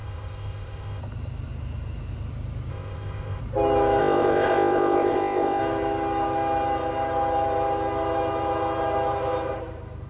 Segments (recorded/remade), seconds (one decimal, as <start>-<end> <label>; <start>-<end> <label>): 0.0-1.0 remade; 1.0-2.7 recorded; 2.7-3.4 remade; 3.4-4.0 recorded; 4.0-5.6 remade; 5.6-10.1 recorded